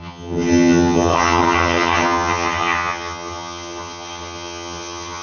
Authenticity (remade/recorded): remade